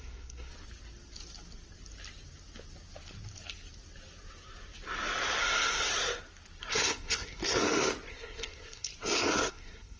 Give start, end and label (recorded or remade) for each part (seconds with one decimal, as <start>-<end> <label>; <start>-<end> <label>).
0.0-0.5 remade; 0.5-5.4 recorded; 5.4-5.9 remade; 5.9-6.7 recorded; 6.7-7.4 remade; 7.4-8.1 recorded; 8.1-8.9 remade; 8.9-9.5 recorded; 9.5-10.0 remade